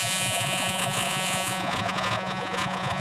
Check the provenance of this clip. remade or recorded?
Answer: remade